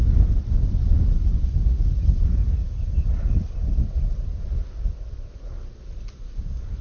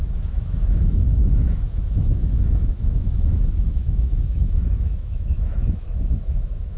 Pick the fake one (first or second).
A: second